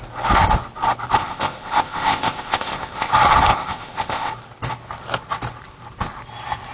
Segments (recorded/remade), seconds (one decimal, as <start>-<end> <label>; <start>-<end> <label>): 0.0-1.2 recorded; 1.2-3.1 remade; 3.1-3.5 recorded; 3.5-4.3 remade; 4.3-6.7 recorded